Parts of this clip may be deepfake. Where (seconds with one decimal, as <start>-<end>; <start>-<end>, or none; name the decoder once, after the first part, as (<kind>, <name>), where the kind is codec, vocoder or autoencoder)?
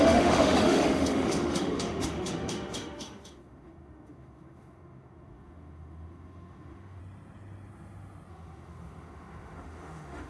0.0-7.0 (autoencoder, DAC-VAE); 8.3-10.3